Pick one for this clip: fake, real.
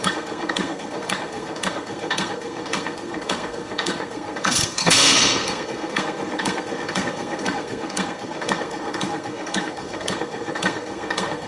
fake